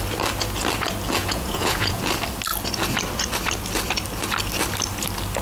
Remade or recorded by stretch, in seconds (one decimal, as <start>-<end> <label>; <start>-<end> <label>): 0.0-1.2 recorded; 1.2-2.0 remade; 2.0-5.4 recorded